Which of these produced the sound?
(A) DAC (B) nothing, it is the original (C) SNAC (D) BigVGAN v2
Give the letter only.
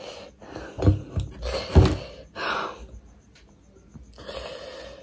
B